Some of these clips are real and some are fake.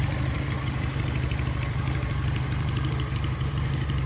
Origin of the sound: fake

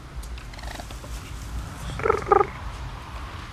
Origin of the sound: real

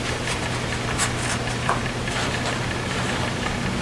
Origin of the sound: real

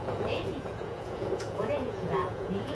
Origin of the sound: fake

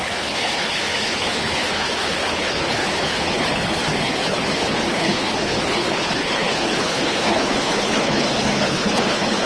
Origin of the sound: fake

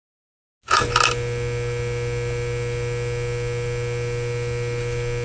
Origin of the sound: real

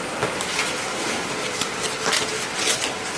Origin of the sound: real